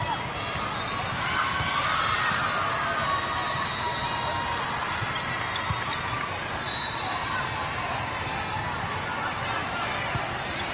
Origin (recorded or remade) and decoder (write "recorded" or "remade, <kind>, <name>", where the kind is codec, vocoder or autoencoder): recorded